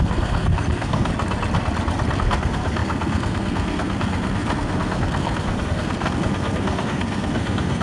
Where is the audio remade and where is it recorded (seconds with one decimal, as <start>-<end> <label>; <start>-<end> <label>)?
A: 0.0-1.1 remade; 1.1-2.2 recorded; 2.2-7.8 remade